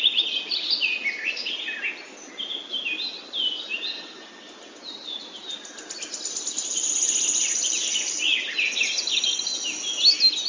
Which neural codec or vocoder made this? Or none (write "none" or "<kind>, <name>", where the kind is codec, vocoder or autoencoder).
none